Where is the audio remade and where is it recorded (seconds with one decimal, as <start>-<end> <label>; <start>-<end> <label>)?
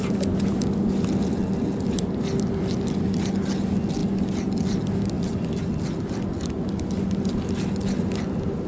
0.0-8.7 recorded